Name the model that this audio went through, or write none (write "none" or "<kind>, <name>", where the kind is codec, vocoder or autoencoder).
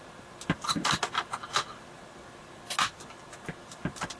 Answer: none